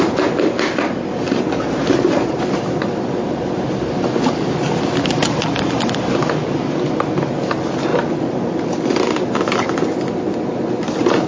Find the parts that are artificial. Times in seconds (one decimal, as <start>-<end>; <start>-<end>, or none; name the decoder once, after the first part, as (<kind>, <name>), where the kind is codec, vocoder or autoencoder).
none

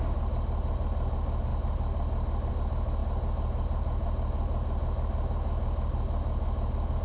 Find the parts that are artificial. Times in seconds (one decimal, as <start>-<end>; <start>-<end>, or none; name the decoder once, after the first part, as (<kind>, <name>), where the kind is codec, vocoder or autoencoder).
none

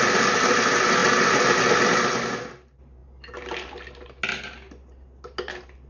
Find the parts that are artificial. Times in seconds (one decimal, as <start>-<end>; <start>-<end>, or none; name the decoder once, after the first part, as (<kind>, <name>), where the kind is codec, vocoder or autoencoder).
none